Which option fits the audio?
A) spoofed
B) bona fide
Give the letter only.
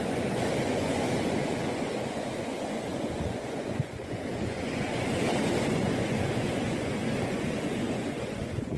A